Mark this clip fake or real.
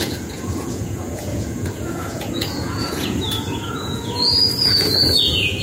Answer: fake